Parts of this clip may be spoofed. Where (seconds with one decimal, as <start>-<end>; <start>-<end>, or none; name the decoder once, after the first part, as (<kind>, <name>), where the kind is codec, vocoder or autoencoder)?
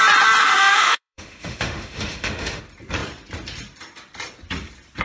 0.4-2.6 (autoencoder, DAC-VAE)